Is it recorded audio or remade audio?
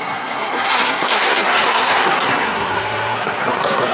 remade